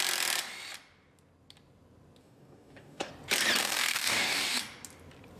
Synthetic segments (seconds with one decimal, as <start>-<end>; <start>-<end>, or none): 2.2-3.1; 3.6-4.6